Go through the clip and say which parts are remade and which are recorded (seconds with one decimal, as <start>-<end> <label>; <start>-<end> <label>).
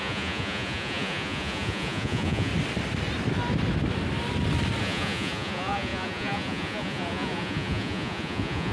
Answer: 0.0-2.5 remade; 2.5-4.8 recorded; 4.8-8.7 remade